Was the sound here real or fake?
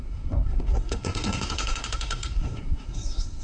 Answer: fake